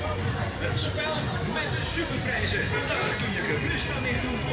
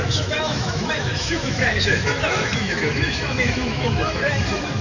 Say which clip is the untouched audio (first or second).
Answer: first